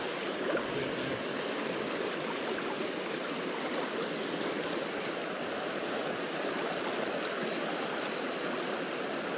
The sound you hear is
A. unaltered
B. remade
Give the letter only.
A